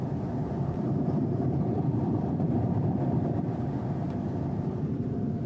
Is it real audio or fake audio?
fake